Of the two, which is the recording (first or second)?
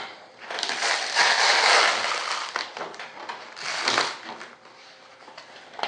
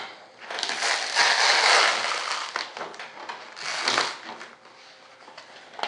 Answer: second